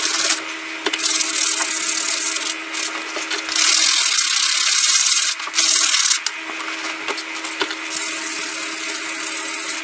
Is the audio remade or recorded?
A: recorded